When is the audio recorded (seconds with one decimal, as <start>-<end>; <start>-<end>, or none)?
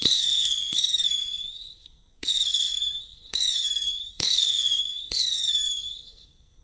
none